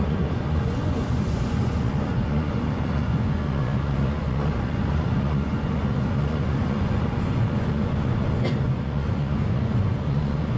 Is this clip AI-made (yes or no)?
yes